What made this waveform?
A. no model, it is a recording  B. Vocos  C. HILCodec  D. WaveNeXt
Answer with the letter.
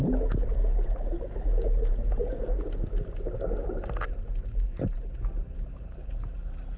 A